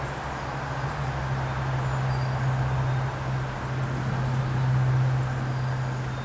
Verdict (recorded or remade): recorded